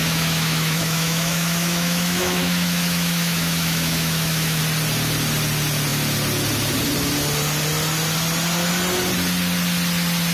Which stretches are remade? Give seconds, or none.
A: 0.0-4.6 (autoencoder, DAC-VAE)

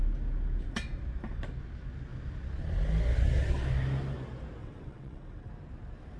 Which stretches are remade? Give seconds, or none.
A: 4.6-5.5 (vocoder, WaveNeXt)

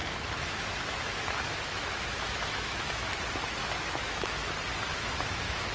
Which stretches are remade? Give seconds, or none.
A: 0.0-3.1 (autoencoder, DAC-VAE); 3.6-4.5; 4.9-5.7

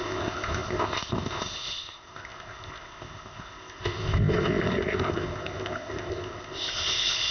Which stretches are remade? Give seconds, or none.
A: 0.0-7.3 (codec, ZipCodec)

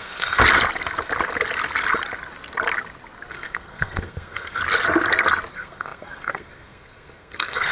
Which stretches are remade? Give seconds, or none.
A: 0.0-0.4 (codec, SNAC); 3.3-4.6; 5.5-7.7

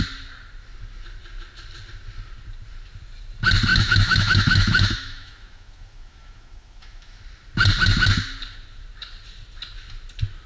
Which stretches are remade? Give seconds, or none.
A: 3.7-7.2 (autoencoder, DAC-VAE)

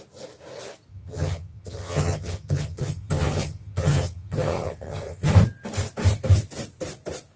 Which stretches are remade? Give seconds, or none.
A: 0.9-5.3 (vocoder, HiFi-GAN)

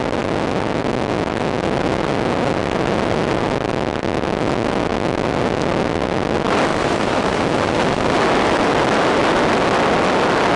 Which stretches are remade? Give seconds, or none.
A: 6.7-7.4 (vocoder, BigVGAN v2)